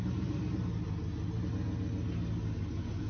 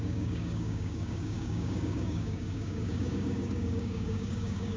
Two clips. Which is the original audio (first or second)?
first